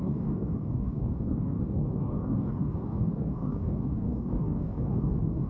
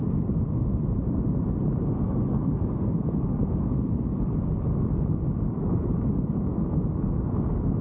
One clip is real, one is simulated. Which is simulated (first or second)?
first